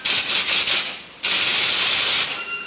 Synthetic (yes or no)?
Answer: no